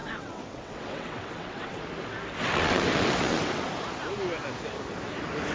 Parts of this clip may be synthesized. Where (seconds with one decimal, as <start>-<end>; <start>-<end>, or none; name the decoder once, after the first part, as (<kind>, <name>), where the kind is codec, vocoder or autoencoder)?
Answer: 0.0-1.8 (vocoder, WaveNeXt); 2.4-3.6